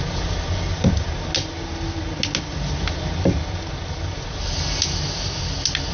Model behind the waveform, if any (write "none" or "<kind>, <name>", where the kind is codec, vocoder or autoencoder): none